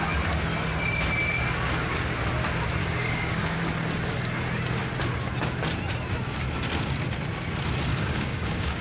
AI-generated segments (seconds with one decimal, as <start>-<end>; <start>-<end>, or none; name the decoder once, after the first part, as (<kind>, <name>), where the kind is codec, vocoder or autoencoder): 2.8-3.6 (codec, DAC); 7.9-8.8